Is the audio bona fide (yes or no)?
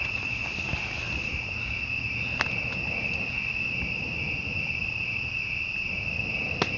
yes